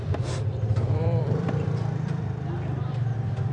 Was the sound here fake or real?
fake